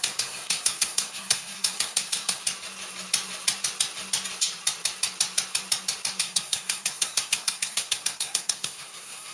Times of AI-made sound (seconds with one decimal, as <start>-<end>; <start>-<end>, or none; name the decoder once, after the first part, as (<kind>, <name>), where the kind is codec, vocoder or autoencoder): 0.0-2.4 (codec, SNAC); 6.2-9.3